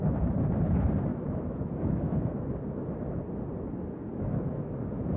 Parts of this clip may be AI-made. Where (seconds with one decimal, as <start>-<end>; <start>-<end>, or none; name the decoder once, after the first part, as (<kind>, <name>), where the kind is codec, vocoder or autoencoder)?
1.1-2.4 (autoencoder, DAC-VAE); 4.0-4.8